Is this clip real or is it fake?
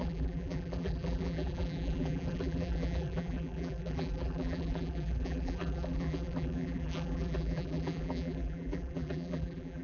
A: fake